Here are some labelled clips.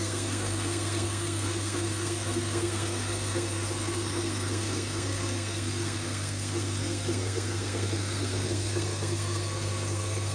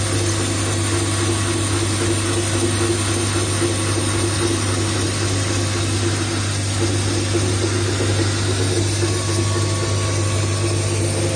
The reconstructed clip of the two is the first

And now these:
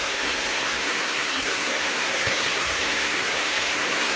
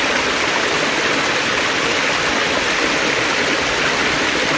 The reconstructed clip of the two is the first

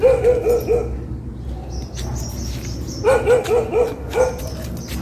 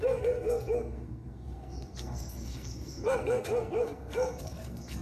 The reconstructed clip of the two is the second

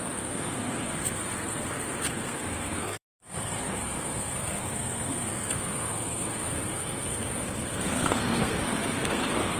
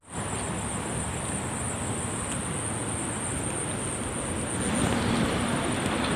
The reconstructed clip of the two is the first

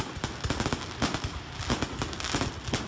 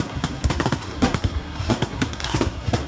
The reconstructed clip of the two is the second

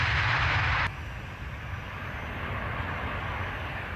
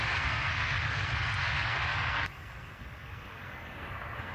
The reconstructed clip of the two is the second